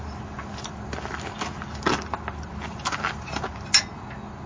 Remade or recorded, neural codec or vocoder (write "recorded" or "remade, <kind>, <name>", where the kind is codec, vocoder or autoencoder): recorded